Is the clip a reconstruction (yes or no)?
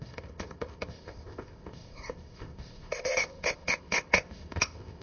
yes